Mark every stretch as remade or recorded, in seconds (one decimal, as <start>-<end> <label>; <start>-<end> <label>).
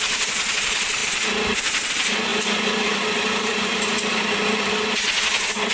0.0-2.3 recorded; 2.3-4.7 remade; 4.7-5.7 recorded